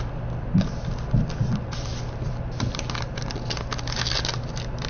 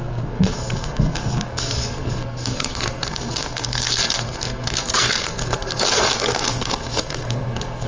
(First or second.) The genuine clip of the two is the first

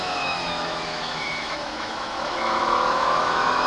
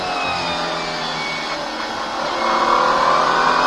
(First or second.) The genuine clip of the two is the second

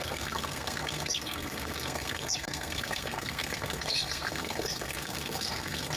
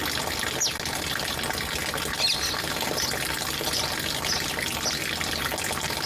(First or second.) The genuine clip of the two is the second